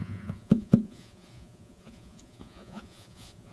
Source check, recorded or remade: remade